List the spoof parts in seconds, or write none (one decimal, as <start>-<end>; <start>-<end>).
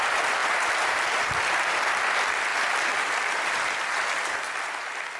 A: none